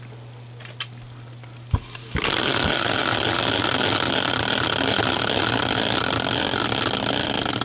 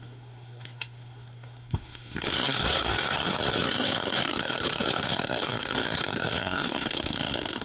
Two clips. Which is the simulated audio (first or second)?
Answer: second